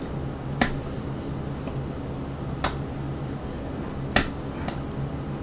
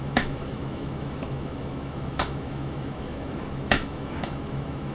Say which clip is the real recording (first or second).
first